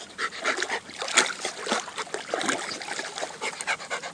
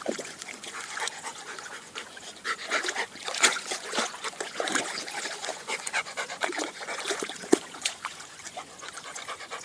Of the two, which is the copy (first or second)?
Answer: second